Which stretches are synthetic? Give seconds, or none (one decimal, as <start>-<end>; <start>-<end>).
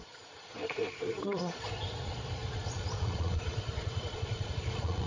0.0-5.1